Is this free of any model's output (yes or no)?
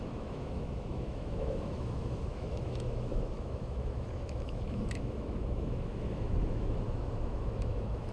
no